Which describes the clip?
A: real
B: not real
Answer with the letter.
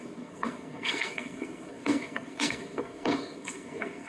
B